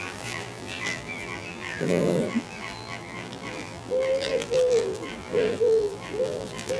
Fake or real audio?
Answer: fake